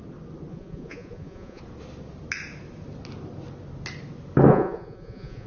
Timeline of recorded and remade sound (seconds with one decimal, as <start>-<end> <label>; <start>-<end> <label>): 0.0-0.5 recorded; 0.5-1.6 remade; 1.6-4.5 recorded; 4.5-5.5 remade